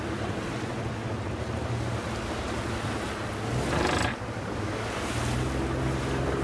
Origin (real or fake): real